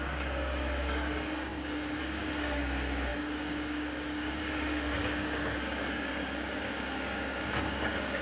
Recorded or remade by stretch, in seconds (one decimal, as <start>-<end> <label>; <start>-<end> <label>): 0.0-8.2 remade